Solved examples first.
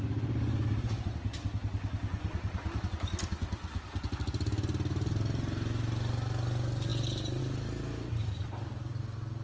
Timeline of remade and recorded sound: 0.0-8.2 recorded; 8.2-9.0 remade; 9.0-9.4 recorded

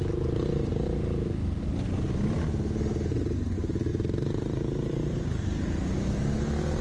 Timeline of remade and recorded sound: 0.0-3.9 recorded; 3.9-6.2 remade; 6.2-6.8 recorded

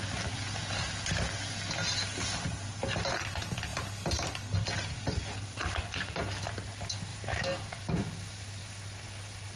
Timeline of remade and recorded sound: 0.0-3.7 recorded; 3.7-4.3 remade; 4.3-7.1 recorded; 7.1-7.8 remade; 7.8-9.6 recorded

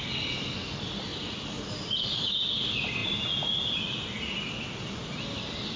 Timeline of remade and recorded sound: 0.0-5.8 recorded